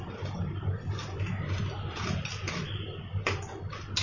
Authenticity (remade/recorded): remade